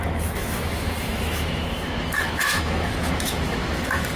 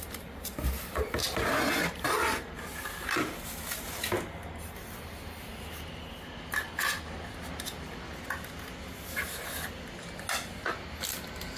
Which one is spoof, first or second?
first